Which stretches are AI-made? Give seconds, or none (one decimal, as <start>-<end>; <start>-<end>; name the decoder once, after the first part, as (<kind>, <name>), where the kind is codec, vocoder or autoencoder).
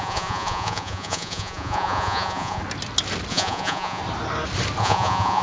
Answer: 0.0-2.6 (vocoder, Vocos); 3.3-4.0; 4.8-5.4